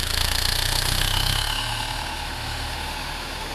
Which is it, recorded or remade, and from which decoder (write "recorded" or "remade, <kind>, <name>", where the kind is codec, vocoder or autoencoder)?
remade, autoencoder, DAC-VAE